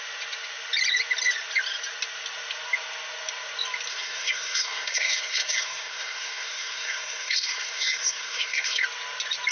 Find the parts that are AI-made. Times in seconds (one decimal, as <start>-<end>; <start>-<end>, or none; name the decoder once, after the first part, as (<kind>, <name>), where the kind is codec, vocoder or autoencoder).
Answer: 3.9-8.8 (codec, SNAC)